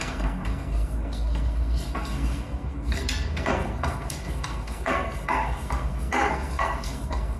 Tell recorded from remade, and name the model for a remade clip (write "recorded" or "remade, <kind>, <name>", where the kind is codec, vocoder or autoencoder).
remade, codec, SNAC